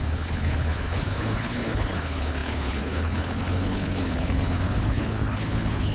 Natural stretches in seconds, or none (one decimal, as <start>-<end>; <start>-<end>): none